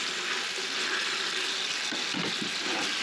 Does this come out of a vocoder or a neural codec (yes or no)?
no